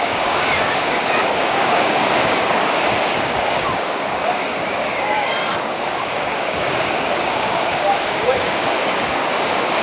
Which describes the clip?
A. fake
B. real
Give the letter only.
A